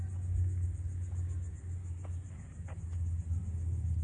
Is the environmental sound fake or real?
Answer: real